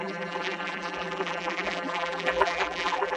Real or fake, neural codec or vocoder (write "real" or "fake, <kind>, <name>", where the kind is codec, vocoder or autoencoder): fake, vocoder, BigVGAN v2